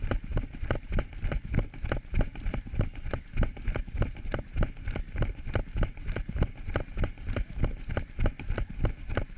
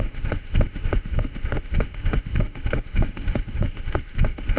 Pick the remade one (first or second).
second